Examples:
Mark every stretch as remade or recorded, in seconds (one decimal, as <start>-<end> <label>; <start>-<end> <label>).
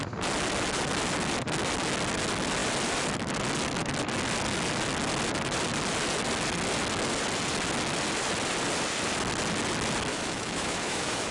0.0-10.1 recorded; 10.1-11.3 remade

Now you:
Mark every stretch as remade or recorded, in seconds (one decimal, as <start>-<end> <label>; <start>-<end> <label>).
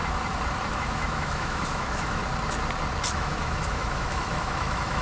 0.0-0.7 recorded; 0.7-2.2 remade; 2.2-3.1 recorded; 3.1-5.0 remade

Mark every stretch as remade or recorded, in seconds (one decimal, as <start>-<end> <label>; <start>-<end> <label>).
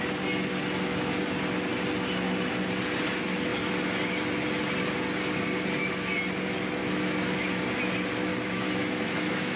0.0-6.8 recorded; 6.8-7.6 remade; 7.6-8.3 recorded; 8.3-9.6 remade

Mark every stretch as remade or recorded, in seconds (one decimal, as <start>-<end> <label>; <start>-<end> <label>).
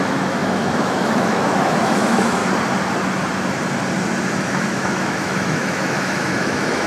0.0-2.4 remade; 2.4-4.4 recorded; 4.4-6.9 remade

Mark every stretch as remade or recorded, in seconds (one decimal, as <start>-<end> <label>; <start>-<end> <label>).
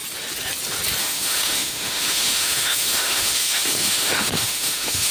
0.0-1.0 recorded; 1.0-5.1 remade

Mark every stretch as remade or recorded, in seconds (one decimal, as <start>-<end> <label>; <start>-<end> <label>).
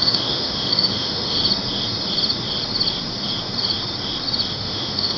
0.0-1.4 remade; 1.4-4.5 recorded; 4.5-5.2 remade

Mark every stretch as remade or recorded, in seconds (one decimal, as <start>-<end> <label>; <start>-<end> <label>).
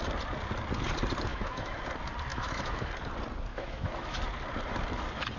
0.0-1.3 recorded; 1.3-1.8 remade; 1.8-2.3 recorded; 2.3-2.9 remade; 2.9-3.5 recorded; 3.5-4.2 remade; 4.2-5.4 recorded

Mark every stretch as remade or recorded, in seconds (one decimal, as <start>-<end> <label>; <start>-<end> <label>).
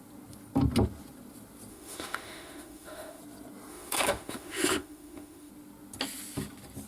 0.0-1.7 recorded; 1.7-3.2 remade; 3.2-3.7 recorded; 3.7-5.5 remade; 5.5-6.9 recorded